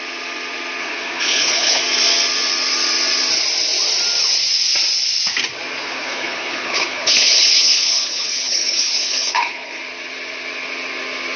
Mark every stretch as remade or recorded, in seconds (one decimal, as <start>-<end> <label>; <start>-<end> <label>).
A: 0.0-0.8 recorded; 0.8-1.8 remade; 1.8-5.8 recorded; 5.8-9.8 remade; 9.8-11.4 recorded